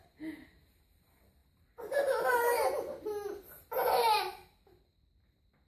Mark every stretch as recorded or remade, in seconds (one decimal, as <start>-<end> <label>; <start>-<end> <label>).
0.0-5.7 recorded